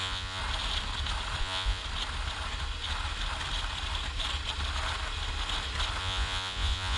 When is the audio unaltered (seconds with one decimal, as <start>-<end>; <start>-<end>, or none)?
0.4-1.4; 1.8-6.0